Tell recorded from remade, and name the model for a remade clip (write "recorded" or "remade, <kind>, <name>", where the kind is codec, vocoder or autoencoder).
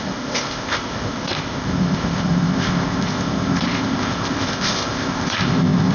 remade, codec, ZipCodec